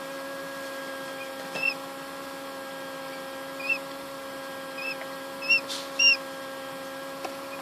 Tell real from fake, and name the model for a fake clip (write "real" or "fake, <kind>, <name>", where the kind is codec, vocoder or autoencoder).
fake, vocoder, BigVGAN v2